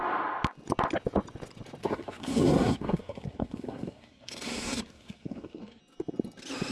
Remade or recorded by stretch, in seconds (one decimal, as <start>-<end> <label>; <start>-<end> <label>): 0.0-1.8 recorded; 1.8-5.8 remade; 5.8-6.7 recorded

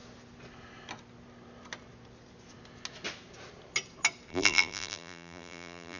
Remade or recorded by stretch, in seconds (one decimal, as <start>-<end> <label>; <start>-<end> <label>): 0.0-4.3 recorded; 4.3-6.0 remade

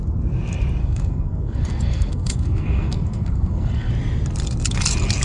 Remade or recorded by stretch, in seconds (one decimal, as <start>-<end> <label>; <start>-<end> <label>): 0.0-0.8 recorded; 0.8-3.9 remade; 3.9-5.2 recorded